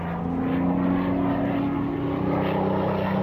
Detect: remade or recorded recorded